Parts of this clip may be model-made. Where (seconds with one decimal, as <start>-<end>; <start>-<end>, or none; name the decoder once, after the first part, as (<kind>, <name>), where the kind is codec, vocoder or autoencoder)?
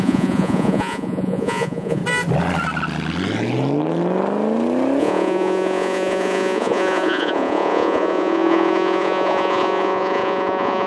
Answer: 0.0-2.0 (vocoder, Vocos); 5.0-10.9